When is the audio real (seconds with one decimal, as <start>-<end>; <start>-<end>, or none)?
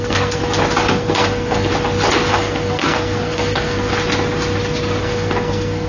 0.4-0.9; 1.7-2.3; 3.9-5.0